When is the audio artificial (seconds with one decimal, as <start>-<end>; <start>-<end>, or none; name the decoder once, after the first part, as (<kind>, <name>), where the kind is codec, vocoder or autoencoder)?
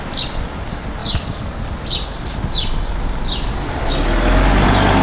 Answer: none